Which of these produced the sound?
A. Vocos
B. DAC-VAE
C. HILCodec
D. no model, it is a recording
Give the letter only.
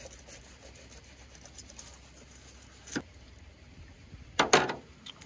D